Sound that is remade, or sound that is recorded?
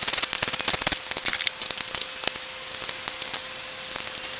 recorded